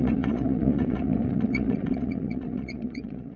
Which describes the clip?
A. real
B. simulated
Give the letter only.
B